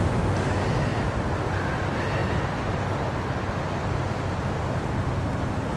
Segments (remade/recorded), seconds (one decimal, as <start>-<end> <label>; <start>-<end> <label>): 0.0-5.8 recorded